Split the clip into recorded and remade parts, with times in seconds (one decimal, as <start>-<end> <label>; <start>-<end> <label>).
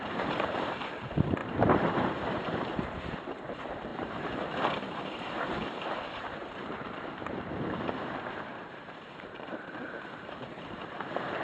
0.0-11.4 remade